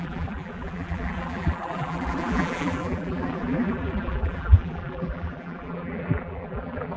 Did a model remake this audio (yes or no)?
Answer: yes